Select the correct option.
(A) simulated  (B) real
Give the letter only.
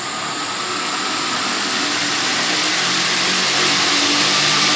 B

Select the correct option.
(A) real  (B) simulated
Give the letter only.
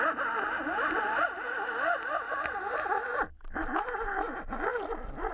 A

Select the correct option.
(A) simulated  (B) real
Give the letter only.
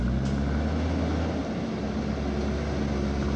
B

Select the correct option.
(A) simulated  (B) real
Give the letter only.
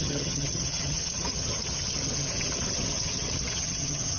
A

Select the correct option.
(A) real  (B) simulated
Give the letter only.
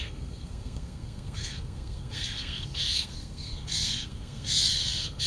B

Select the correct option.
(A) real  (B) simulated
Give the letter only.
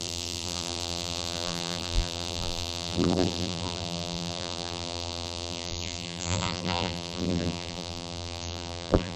B